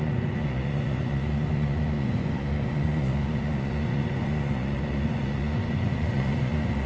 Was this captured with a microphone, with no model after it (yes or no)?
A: no